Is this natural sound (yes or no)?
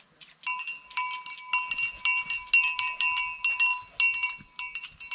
yes